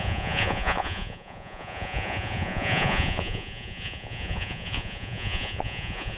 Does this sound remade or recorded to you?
remade